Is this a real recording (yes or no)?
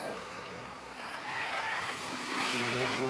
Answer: no